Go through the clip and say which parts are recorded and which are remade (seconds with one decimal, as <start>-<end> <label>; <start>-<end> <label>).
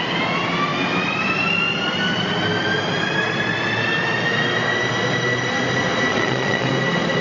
0.0-6.1 recorded; 6.1-6.7 remade; 6.7-7.2 recorded